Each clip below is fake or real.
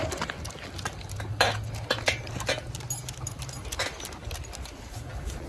real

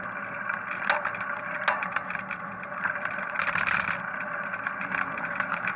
real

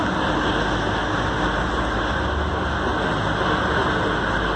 real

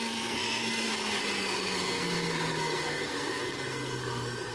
fake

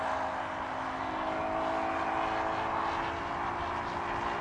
real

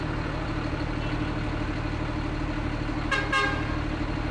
real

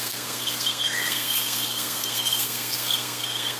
fake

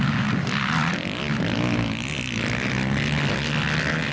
real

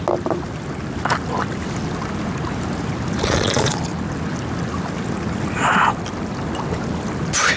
real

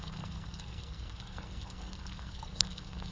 fake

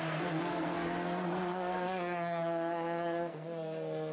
fake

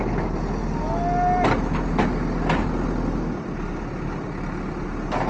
real